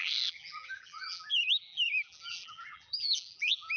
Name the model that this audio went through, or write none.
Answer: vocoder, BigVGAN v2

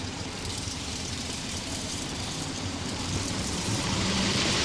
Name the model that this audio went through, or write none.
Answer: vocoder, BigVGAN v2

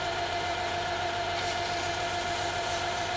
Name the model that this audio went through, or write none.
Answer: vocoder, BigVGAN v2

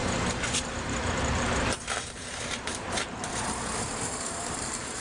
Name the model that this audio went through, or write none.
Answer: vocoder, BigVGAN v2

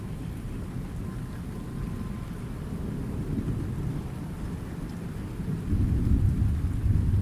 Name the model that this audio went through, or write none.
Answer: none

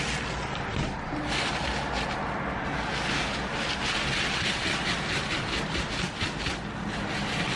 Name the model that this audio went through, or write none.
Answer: none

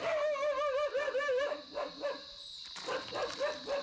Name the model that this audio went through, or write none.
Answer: none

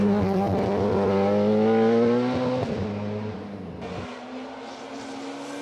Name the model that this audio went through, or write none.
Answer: none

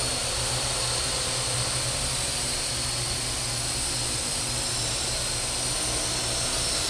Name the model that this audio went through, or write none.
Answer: none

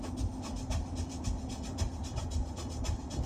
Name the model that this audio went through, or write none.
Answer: vocoder, BigVGAN v2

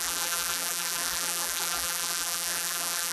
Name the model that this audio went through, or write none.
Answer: vocoder, BigVGAN v2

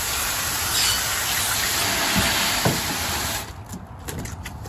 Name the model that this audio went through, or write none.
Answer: none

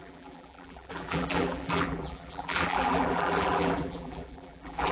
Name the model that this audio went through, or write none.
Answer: vocoder, BigVGAN v2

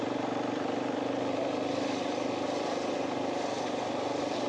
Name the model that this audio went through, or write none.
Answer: vocoder, BigVGAN v2